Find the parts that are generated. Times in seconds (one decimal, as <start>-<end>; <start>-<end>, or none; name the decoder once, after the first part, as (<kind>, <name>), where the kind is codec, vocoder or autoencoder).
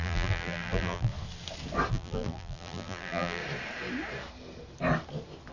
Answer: 0.0-1.1 (vocoder, BigVGAN v2); 1.9-3.4